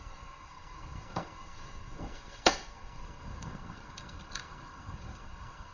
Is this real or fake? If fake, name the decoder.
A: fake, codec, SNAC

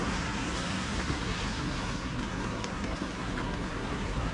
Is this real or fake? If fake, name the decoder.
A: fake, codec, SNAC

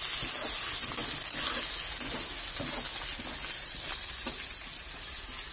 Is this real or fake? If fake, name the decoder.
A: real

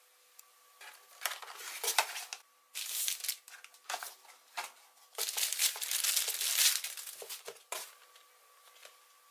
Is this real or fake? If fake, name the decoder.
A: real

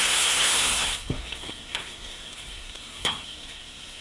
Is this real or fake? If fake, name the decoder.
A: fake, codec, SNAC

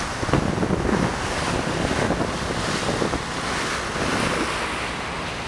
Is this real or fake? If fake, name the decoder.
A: real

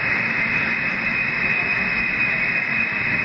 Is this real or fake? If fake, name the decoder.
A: real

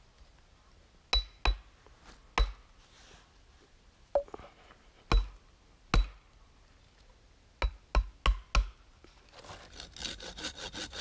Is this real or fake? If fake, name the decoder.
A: real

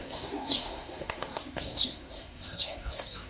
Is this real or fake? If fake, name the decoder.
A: fake, codec, SNAC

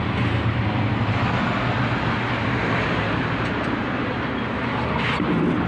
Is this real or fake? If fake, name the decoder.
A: real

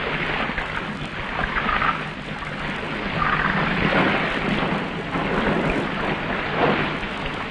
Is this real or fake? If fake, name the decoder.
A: real